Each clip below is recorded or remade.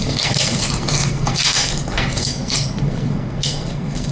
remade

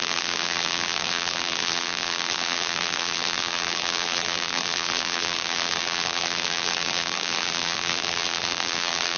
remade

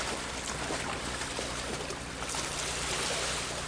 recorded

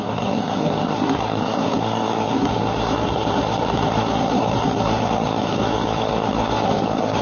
remade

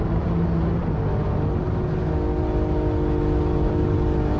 recorded